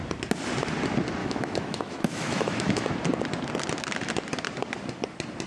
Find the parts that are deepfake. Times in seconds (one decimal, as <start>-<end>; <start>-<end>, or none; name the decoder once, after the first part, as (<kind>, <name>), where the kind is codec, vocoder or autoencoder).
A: 1.2-2.9 (autoencoder, DAC-VAE)